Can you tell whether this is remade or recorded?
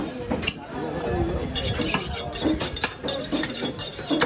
recorded